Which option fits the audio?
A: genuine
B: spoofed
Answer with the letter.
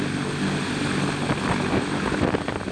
A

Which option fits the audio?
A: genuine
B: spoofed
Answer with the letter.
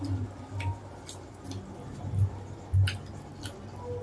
A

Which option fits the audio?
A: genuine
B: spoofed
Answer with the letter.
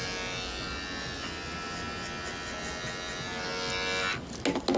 A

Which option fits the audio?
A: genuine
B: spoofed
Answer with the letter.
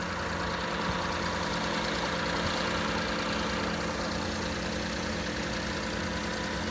A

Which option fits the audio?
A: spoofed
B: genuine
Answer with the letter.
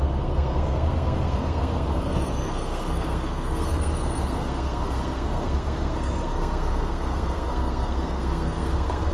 A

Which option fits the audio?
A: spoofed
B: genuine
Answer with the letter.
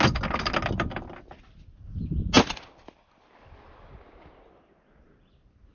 B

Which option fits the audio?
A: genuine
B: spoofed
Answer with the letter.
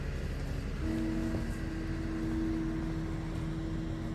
A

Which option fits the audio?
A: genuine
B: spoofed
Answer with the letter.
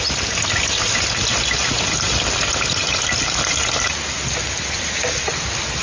A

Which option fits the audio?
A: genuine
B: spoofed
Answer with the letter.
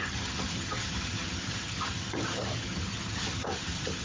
B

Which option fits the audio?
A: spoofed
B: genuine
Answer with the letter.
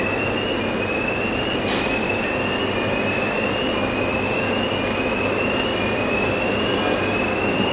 B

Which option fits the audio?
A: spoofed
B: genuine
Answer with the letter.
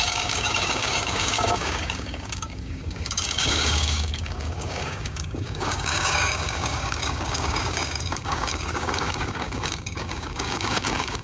A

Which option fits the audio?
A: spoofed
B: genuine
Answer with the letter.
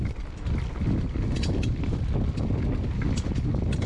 B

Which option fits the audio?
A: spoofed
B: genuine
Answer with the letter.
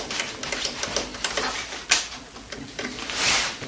B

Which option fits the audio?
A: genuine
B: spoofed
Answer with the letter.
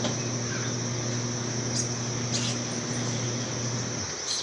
A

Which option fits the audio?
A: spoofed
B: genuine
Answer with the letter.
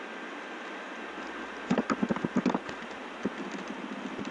B